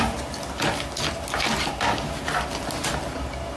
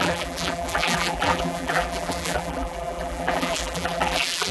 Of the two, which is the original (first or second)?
first